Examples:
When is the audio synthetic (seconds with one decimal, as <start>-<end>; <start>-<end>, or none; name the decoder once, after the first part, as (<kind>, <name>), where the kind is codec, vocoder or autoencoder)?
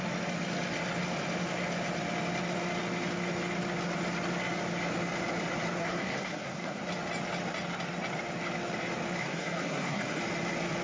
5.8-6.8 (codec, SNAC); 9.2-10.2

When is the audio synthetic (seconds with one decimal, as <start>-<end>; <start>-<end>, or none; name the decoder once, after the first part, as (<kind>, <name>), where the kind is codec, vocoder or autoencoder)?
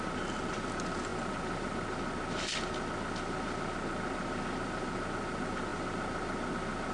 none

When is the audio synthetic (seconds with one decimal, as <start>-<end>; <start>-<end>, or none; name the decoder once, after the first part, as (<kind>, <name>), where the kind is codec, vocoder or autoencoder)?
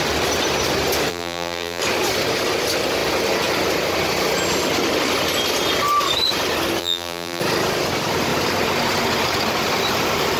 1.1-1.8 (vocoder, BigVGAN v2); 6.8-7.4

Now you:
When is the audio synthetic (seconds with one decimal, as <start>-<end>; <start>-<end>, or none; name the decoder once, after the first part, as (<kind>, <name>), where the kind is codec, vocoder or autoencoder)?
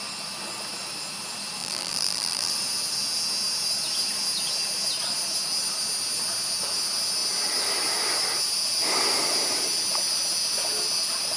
1.6-2.5 (vocoder, BigVGAN v2)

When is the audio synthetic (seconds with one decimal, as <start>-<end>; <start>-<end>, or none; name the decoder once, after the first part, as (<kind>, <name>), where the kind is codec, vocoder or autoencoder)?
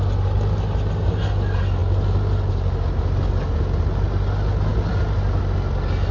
none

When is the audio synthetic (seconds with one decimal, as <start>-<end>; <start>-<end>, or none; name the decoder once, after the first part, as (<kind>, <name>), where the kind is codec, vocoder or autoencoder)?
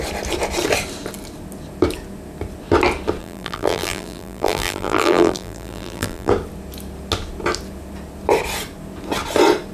3.2-6.3 (vocoder, BigVGAN v2)